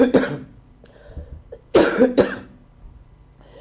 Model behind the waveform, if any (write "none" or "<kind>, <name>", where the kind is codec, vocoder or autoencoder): vocoder, BigVGAN v2